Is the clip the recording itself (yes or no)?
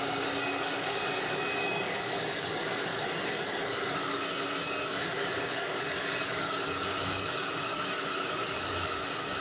no